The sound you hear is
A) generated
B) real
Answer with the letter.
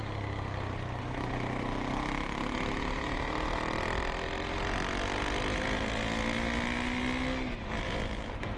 B